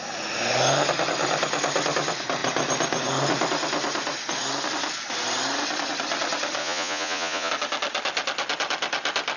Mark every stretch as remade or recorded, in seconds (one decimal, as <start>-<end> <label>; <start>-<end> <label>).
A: 0.0-6.6 recorded; 6.6-7.5 remade; 7.5-9.4 recorded